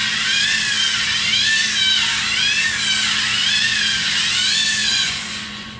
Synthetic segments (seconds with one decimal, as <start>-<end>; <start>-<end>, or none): 4.8-5.8